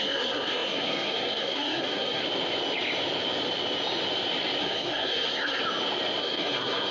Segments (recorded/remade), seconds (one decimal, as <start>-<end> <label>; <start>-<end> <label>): 0.0-2.2 remade; 2.2-4.6 recorded; 4.6-5.6 remade; 5.6-6.2 recorded; 6.2-6.9 remade